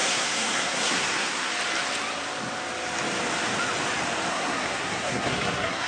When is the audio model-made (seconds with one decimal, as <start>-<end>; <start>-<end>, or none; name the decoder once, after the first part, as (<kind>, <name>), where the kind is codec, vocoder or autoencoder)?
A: 0.0-1.5 (codec, SNAC); 4.3-5.9